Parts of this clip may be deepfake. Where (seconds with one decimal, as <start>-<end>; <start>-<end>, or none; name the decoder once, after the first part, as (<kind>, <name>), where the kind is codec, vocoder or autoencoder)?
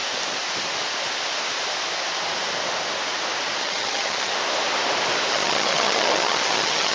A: 3.6-4.3 (vocoder, HiFi-GAN); 5.3-6.9